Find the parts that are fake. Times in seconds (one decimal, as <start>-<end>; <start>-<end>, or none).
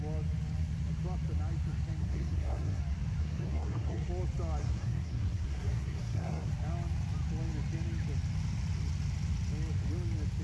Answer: 2.0-2.8; 3.2-4.1; 4.6-6.5